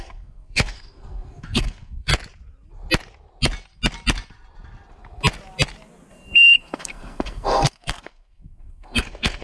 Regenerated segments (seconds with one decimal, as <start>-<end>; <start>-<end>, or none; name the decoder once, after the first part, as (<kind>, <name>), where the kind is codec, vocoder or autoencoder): 0.0-2.1 (codec, SNAC); 6.1-9.4